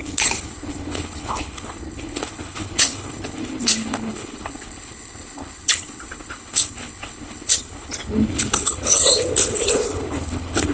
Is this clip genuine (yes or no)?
no